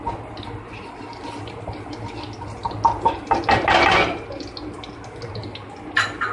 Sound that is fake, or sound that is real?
real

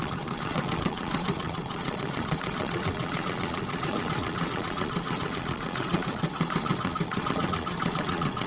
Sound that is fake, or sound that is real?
fake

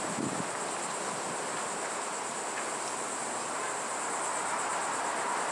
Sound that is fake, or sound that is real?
real